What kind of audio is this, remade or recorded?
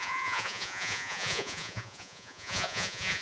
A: remade